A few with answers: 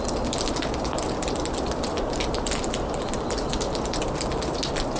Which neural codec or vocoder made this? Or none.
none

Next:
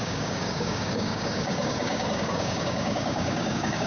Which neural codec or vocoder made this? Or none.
codec, DAC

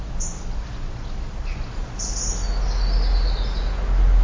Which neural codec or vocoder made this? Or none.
none